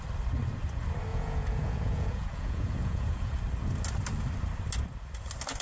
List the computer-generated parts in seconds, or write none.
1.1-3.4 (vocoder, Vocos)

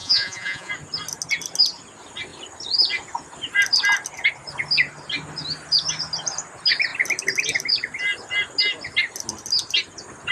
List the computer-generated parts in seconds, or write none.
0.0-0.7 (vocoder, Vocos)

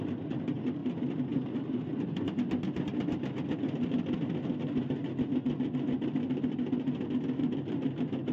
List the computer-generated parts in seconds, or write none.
none

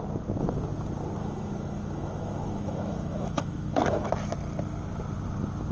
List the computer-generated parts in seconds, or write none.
1.2-4.1 (autoencoder, DAC-VAE)

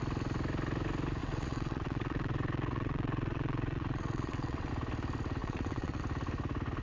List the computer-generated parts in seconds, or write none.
1.2-4.7 (vocoder, WaveNeXt); 5.4-6.0

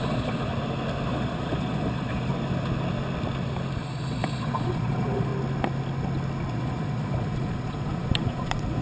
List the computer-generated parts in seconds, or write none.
0.0-0.5 (vocoder, Vocos); 1.1-2.3; 3.8-5.3; 6.5-8.8

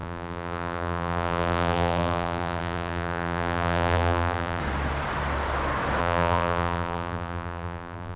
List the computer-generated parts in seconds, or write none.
0.0-4.6 (vocoder, BigVGAN v2); 6.0-8.2

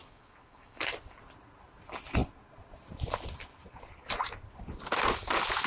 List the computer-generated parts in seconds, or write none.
0.0-0.9 (autoencoder, DAC-VAE)